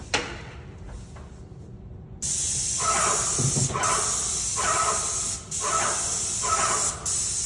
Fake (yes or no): no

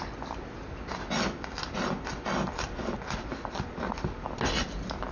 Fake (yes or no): no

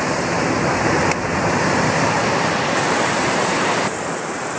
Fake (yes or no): yes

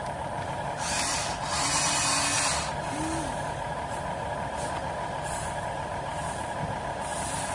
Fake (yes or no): no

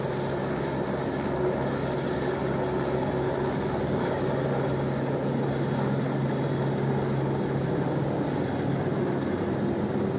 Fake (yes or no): no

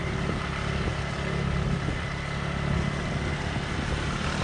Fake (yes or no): no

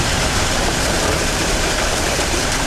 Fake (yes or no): yes